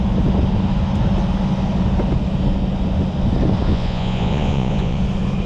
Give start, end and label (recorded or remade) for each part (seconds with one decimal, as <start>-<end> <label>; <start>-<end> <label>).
0.0-3.7 recorded; 3.7-5.0 remade; 5.0-5.5 recorded